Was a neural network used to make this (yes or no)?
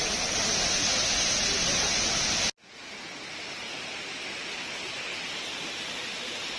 no